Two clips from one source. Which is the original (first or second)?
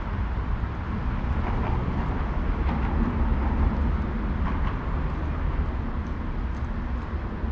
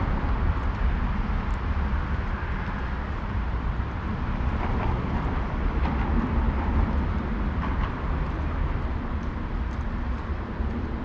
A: first